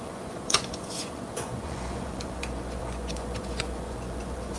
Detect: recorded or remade remade